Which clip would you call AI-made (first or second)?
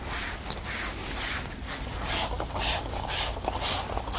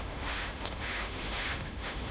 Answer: second